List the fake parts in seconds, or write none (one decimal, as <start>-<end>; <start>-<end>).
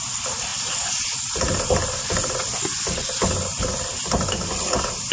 none